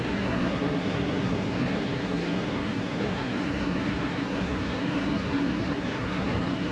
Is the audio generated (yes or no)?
yes